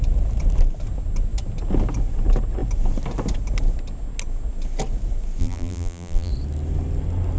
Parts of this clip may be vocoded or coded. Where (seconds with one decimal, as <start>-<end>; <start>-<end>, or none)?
5.4-6.3